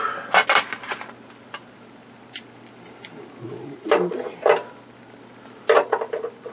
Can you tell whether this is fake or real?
real